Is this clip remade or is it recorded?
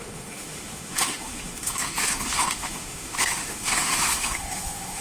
remade